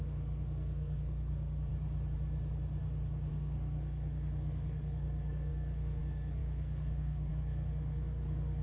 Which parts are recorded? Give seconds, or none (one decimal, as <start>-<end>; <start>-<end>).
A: 1.7-3.3